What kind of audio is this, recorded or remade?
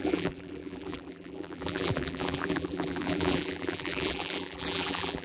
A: remade